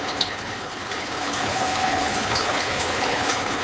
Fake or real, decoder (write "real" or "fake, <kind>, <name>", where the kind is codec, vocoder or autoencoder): fake, codec, HILCodec